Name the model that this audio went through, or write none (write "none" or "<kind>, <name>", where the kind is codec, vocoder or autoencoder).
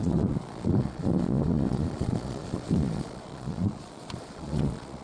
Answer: vocoder, Vocos